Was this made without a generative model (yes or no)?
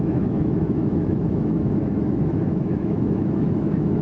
no